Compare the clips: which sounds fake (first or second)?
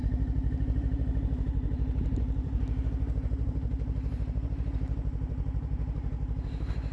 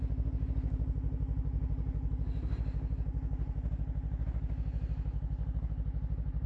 first